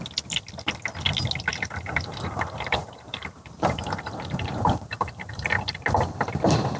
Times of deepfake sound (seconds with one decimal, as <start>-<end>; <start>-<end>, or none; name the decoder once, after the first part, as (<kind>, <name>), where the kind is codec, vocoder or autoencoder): 1.5-5.6 (vocoder, BigVGAN v2)